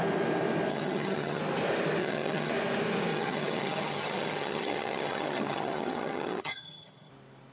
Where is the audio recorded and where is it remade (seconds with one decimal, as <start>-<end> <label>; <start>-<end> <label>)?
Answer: 0.0-0.7 recorded; 0.7-1.4 remade; 1.4-2.0 recorded; 2.0-2.5 remade; 2.5-3.1 recorded; 3.1-7.1 remade; 7.1-7.5 recorded